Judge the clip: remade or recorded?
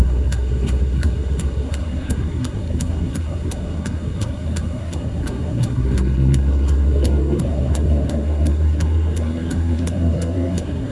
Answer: remade